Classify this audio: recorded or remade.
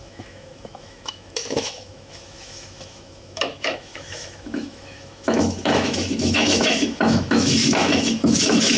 remade